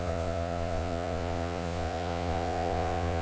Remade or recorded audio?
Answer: remade